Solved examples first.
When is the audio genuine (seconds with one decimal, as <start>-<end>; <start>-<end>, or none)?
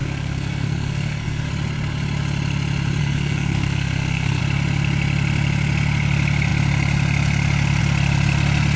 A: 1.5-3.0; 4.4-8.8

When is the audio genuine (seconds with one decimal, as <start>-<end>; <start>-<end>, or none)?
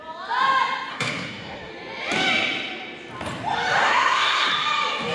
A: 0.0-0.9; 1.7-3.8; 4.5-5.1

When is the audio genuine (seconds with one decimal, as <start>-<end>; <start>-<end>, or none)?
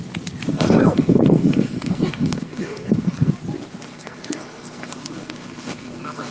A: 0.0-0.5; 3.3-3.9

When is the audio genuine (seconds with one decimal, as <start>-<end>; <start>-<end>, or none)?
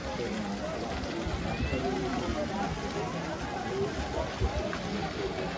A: 0.0-5.6